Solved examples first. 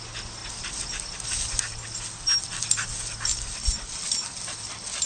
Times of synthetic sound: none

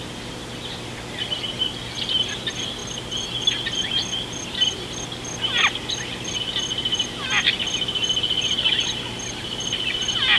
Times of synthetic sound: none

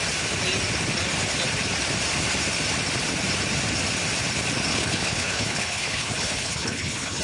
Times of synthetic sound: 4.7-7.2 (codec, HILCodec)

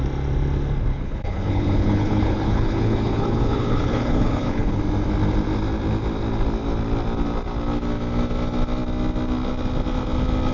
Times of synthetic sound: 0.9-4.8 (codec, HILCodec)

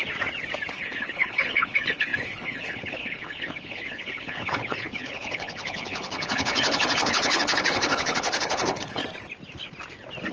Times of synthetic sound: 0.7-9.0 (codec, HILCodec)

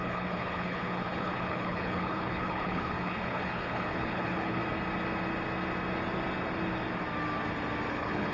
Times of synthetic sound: 0.0-4.6 (codec, HILCodec); 7.9-8.3

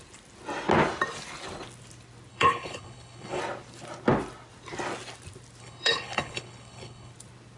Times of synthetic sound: 2.3-3.4 (codec, HILCodec); 5.6-7.1

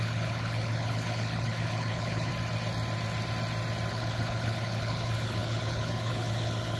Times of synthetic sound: 0.0-2.3 (codec, HILCodec); 3.9-6.8